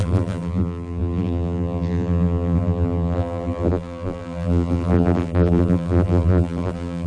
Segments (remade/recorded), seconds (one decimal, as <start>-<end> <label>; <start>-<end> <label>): 0.0-7.1 remade